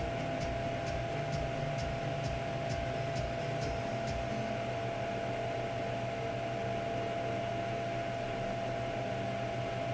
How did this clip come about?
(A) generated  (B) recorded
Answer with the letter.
B